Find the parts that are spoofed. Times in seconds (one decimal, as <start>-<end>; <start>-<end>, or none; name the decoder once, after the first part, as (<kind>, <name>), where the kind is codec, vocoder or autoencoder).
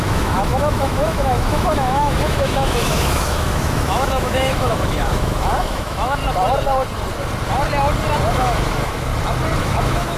0.0-6.2 (autoencoder, DAC-VAE); 8.3-9.1; 9.6-10.2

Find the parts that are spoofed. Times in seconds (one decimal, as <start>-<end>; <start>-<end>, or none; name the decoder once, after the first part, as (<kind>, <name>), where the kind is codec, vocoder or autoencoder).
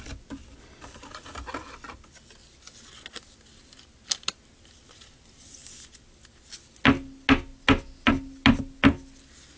none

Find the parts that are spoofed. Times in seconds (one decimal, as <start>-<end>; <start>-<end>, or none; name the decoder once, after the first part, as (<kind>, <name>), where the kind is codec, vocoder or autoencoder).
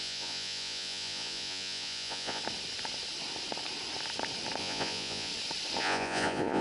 0.0-2.4 (vocoder, Vocos); 4.6-5.3; 5.8-6.6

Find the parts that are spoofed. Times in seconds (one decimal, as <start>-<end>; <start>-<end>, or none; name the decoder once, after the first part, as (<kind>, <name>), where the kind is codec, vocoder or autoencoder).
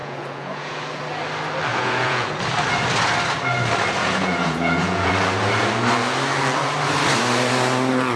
0.0-1.0 (vocoder, Vocos); 1.7-2.4; 4.0-5.1